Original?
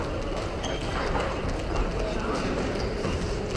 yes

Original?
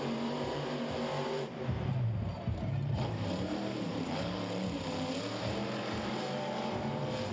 no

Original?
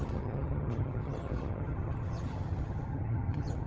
no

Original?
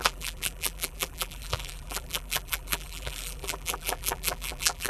no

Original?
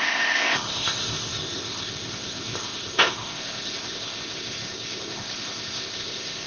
no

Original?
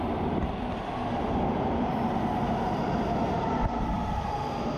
no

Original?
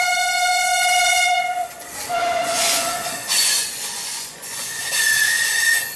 no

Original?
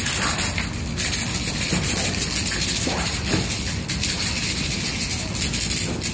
yes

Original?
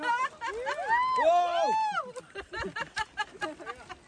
yes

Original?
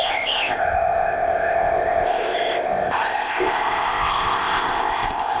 no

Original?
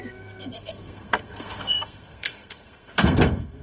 no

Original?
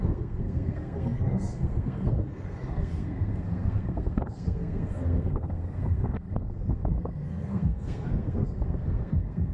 no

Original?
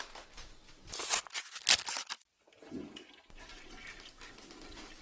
yes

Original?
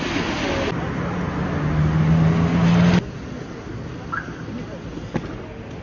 yes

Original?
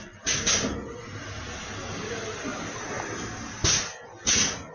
yes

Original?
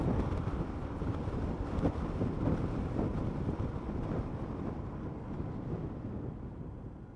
yes